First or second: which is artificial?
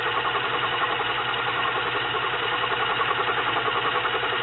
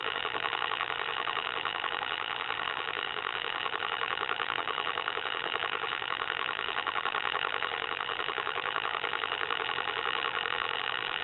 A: second